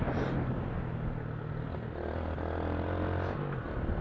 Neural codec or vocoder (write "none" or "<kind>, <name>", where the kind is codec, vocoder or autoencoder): none